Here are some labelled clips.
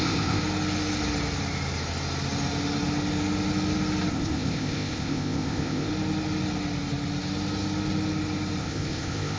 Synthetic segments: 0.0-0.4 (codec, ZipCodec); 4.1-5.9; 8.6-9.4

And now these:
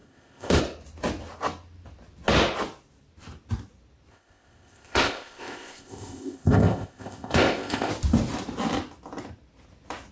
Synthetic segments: 0.0-0.6 (codec, ZipCodec); 4.1-7.9